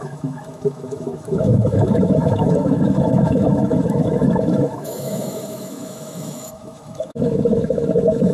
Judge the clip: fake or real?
fake